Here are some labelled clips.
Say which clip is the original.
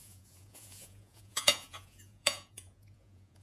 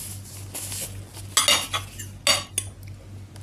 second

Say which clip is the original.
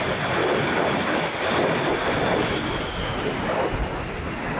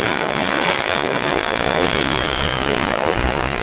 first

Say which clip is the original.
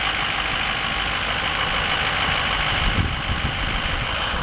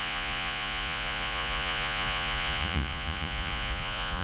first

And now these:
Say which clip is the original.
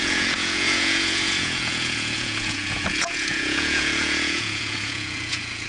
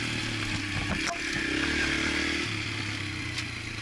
second